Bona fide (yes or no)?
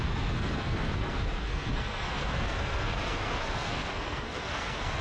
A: no